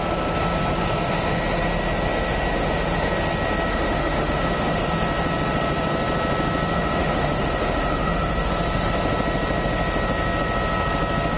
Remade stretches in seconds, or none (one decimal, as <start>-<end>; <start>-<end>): 2.3-3.1; 3.7-4.9; 6.7-8.5